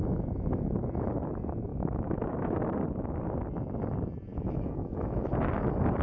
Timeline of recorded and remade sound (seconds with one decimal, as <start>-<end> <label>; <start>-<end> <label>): 0.0-1.7 recorded; 1.7-2.6 remade; 2.6-4.3 recorded; 4.3-5.3 remade; 5.3-6.0 recorded